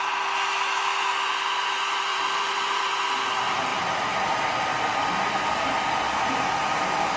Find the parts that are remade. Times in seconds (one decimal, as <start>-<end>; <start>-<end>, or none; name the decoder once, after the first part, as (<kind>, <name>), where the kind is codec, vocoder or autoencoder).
2.1-2.8 (vocoder, BigVGAN v2); 3.7-5.7